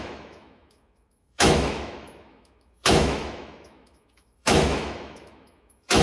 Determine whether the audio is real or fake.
fake